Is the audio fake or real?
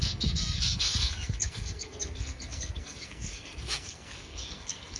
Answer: fake